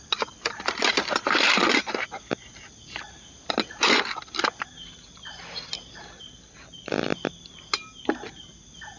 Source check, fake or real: real